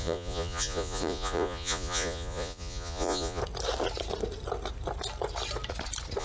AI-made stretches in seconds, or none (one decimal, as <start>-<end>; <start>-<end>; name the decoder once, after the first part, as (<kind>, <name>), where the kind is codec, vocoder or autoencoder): 0.0-3.4 (vocoder, Vocos)